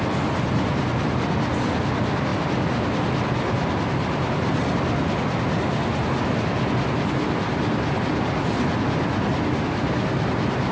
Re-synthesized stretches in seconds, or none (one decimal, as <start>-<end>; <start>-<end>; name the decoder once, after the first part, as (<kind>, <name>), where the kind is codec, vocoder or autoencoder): none